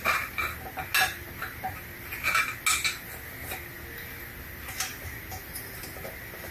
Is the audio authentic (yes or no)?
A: yes